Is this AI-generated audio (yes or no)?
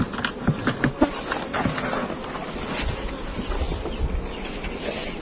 no